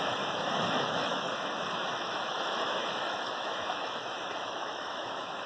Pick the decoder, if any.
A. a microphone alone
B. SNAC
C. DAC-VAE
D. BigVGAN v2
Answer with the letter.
C